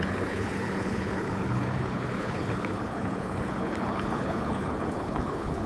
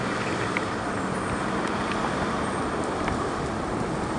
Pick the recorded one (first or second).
second